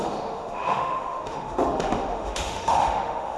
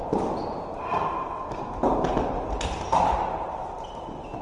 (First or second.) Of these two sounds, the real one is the second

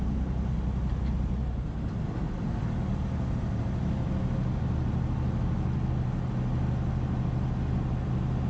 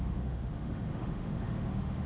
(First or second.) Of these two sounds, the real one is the first